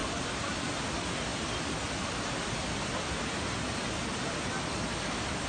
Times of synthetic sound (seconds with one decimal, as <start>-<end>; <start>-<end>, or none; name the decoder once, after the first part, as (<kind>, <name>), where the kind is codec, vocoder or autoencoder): none